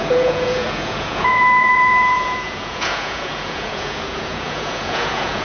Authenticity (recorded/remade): remade